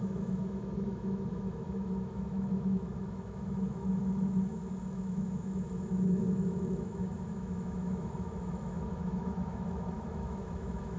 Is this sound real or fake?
fake